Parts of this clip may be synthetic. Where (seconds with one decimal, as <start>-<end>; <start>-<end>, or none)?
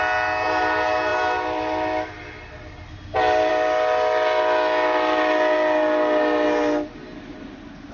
none